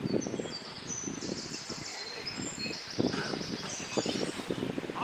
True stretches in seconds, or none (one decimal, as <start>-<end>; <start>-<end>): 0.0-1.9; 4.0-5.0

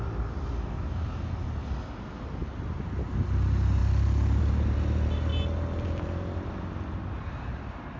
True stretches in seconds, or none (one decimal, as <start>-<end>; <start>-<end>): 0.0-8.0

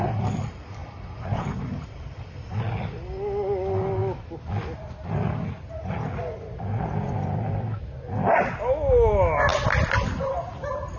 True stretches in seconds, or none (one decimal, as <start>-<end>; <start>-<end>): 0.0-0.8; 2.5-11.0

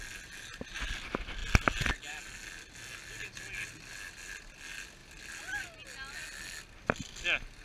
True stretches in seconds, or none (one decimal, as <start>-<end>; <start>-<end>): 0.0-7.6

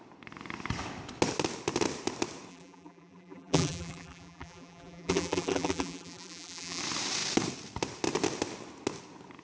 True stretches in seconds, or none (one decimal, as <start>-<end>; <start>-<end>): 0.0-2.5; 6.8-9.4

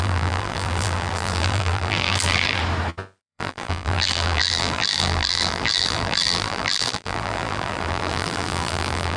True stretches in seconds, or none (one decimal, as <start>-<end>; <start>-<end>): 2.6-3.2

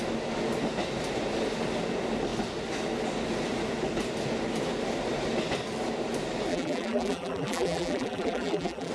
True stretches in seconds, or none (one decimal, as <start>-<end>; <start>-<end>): 0.0-6.5

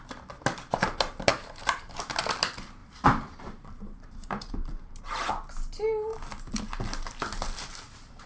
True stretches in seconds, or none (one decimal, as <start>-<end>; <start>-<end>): 0.0-1.3; 2.0-2.8; 5.0-8.3